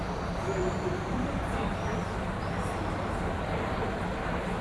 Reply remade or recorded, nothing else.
recorded